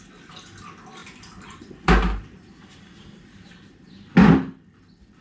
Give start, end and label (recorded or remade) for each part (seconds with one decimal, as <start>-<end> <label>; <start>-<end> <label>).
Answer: 0.0-1.0 recorded; 1.0-4.1 remade; 4.1-5.2 recorded